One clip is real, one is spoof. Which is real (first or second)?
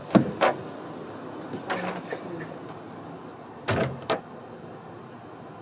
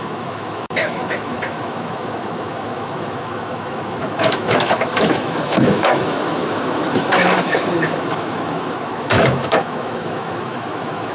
first